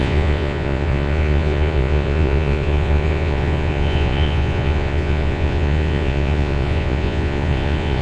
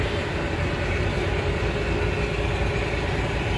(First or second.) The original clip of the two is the second